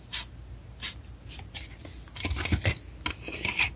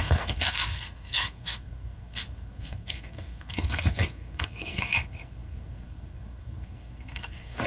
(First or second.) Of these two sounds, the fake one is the second